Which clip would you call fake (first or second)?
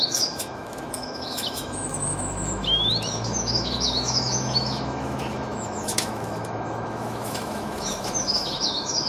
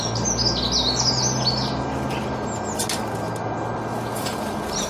first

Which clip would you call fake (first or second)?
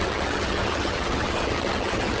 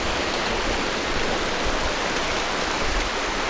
first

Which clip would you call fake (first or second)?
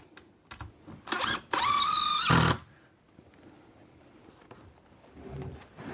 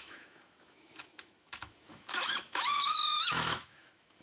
second